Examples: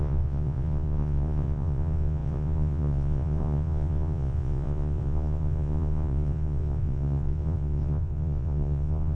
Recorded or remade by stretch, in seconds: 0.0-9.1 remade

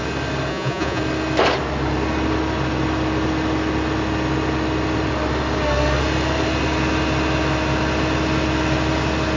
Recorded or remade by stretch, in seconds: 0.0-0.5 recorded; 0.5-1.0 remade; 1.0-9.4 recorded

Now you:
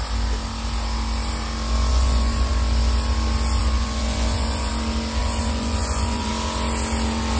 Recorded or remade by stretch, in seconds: 0.0-1.9 recorded; 1.9-2.5 remade; 2.5-3.6 recorded; 3.6-4.7 remade; 4.7-5.2 recorded; 5.2-6.3 remade; 6.3-7.4 recorded

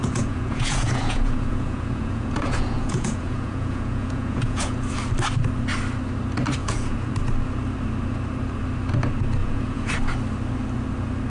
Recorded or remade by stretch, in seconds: 0.0-4.9 remade; 4.9-6.6 recorded; 6.6-7.1 remade; 7.1-9.4 recorded; 9.4-9.9 remade; 9.9-11.3 recorded

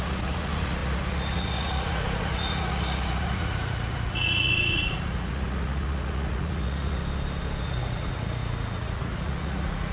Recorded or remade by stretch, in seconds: 0.0-7.0 remade; 7.0-7.6 recorded; 7.6-9.9 remade

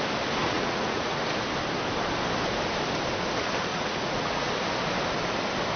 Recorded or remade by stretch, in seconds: 0.0-0.4 recorded; 0.4-1.2 remade; 1.2-3.7 recorded; 3.7-4.5 remade; 4.5-5.8 recorded